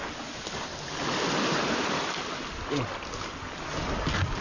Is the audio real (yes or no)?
yes